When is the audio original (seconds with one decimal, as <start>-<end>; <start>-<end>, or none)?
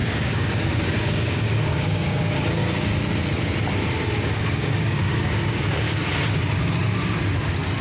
2.6-4.2; 6.0-7.8